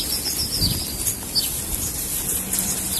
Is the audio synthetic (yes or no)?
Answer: no